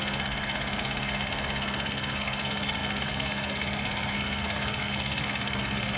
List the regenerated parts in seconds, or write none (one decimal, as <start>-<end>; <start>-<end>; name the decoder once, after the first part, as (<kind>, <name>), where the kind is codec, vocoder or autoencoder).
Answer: 0.0-6.0 (codec, SNAC)